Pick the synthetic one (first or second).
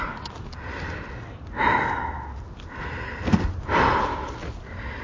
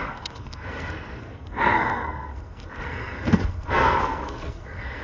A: second